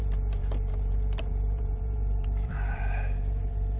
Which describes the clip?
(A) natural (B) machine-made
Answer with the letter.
B